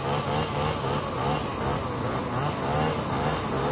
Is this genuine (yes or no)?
yes